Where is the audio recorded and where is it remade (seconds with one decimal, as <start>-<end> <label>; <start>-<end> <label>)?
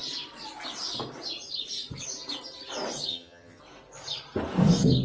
0.0-3.1 recorded; 3.1-3.6 remade; 3.6-5.0 recorded